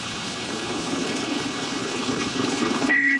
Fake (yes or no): yes